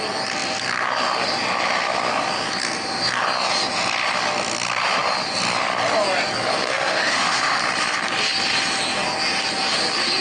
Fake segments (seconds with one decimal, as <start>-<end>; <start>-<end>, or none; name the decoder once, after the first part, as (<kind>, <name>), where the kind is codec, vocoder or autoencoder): 6.7-7.6 (autoencoder, DAC-VAE)